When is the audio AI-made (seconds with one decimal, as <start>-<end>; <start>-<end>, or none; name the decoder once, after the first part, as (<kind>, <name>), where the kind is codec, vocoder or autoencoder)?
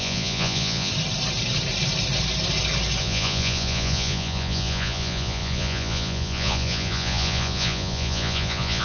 0.0-0.9 (vocoder, Vocos); 3.0-8.8